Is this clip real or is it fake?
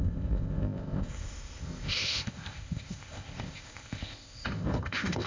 fake